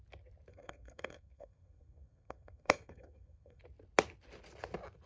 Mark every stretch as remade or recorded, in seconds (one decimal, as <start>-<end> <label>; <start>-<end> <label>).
0.0-0.5 recorded; 0.5-3.6 remade; 3.6-5.1 recorded